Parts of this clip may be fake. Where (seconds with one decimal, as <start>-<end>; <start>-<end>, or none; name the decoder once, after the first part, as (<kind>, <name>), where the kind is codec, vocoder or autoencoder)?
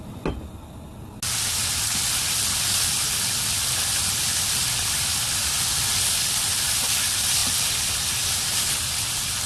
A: none